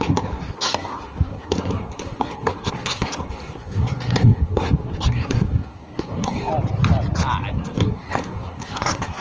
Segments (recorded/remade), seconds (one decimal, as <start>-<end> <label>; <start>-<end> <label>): 0.0-6.5 remade; 6.5-7.5 recorded; 7.5-9.2 remade